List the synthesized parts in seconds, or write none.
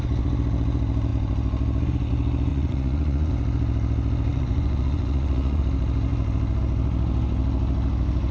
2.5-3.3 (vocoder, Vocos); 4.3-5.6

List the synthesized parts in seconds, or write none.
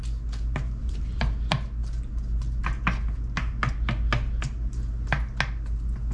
0.8-1.4 (vocoder, BigVGAN v2)